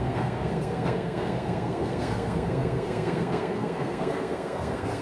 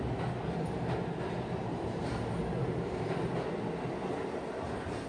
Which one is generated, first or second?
first